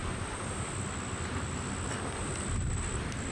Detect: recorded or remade recorded